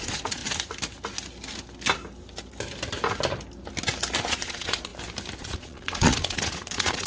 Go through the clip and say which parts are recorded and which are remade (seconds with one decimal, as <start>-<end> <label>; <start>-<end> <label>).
0.0-0.4 remade; 0.4-4.2 recorded; 4.2-4.9 remade; 4.9-5.4 recorded; 5.4-7.1 remade